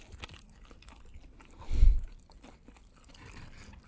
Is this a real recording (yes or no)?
yes